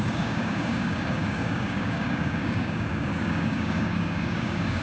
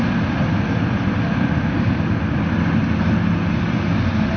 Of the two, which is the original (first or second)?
second